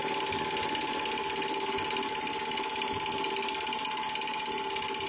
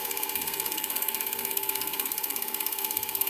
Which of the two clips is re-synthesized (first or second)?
second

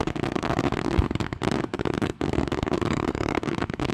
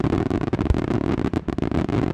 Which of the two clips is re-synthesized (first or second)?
first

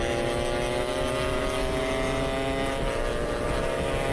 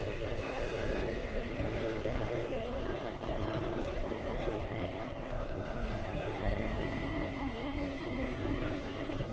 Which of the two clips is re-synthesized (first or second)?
second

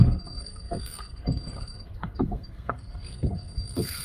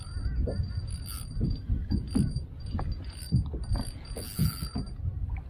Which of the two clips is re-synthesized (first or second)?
first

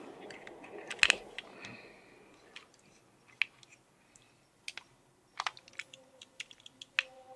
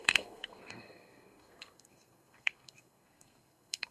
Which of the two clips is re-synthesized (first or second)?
second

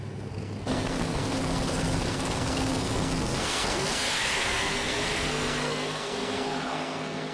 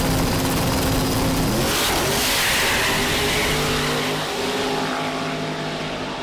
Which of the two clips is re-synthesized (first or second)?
first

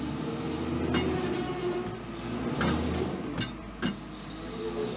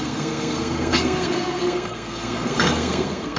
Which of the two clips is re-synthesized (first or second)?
second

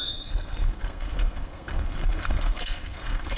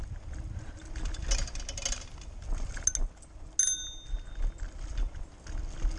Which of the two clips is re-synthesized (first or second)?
first